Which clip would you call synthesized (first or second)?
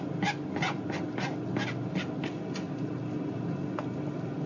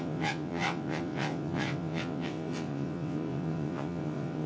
second